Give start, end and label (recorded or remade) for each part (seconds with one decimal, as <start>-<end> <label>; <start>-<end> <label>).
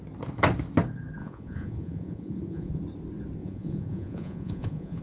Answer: 0.0-1.2 recorded; 1.2-2.8 remade; 2.8-3.4 recorded; 3.4-5.0 remade